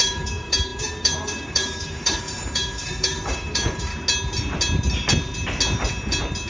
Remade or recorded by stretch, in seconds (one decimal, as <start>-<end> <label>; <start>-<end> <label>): 0.0-3.9 remade; 3.9-6.5 recorded